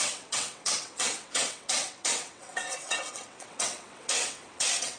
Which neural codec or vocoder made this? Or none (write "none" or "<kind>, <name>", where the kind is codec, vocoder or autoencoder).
vocoder, WaveNeXt